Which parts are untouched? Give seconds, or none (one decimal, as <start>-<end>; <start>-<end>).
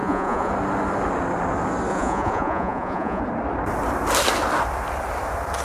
0.5-1.9; 3.2-5.6